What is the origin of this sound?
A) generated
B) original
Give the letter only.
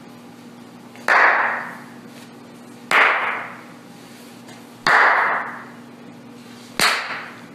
B